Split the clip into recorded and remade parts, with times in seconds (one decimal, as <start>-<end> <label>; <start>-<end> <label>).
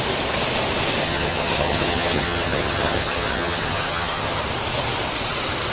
0.0-1.0 recorded; 1.0-4.4 remade; 4.4-5.7 recorded